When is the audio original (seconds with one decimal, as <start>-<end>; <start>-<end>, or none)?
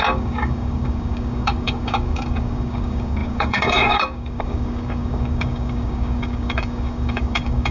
none